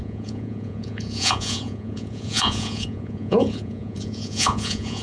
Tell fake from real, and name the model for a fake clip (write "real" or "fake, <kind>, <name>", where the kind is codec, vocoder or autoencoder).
fake, vocoder, Vocos